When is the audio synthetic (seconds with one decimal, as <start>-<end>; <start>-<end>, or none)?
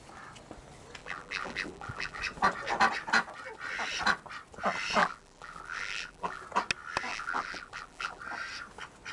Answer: 1.0-2.2; 5.0-6.4; 7.1-8.2